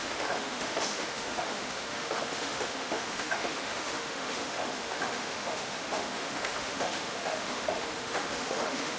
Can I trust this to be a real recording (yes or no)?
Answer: no